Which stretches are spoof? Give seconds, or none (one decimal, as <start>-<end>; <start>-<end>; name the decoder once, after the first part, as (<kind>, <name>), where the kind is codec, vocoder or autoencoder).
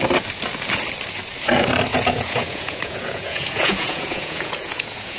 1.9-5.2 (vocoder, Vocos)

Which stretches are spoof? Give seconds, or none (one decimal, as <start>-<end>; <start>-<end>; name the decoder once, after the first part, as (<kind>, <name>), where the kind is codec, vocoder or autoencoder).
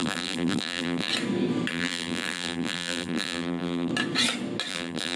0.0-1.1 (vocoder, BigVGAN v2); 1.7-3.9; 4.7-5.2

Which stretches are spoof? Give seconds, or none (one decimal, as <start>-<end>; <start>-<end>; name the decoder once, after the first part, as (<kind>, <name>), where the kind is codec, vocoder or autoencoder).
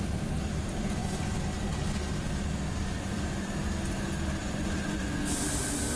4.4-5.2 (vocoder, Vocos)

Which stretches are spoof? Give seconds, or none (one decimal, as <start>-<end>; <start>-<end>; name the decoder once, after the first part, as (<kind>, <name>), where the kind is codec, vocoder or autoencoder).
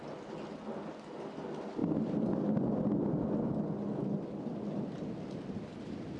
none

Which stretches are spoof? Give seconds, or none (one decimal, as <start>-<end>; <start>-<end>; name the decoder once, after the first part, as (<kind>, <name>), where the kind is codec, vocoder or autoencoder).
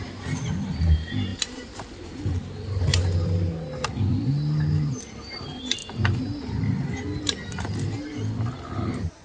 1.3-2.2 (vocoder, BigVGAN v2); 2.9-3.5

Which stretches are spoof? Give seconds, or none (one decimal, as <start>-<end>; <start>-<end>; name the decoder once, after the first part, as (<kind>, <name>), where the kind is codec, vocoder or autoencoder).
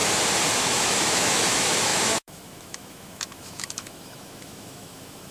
0.6-5.3 (autoencoder, DAC-VAE)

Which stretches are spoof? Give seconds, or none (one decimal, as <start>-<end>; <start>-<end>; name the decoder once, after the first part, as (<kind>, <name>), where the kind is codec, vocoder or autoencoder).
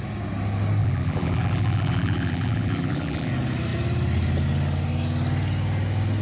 0.8-3.3 (vocoder, BigVGAN v2)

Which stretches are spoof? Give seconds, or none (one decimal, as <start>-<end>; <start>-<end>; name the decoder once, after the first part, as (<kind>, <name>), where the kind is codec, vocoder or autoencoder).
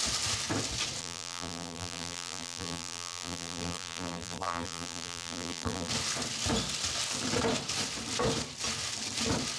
1.0-5.9 (vocoder, BigVGAN v2)